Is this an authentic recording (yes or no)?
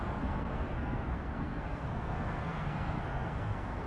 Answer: no